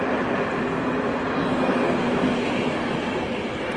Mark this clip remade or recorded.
recorded